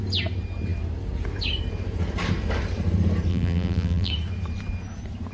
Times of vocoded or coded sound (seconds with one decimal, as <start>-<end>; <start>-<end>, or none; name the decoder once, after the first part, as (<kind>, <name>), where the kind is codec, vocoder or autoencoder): 3.3-4.1 (vocoder, BigVGAN v2)